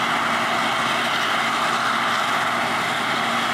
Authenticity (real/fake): real